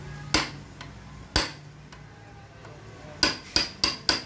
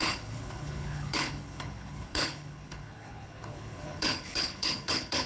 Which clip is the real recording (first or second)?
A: first